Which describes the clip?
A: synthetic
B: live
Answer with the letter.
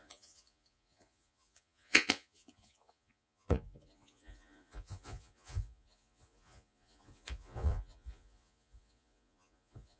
A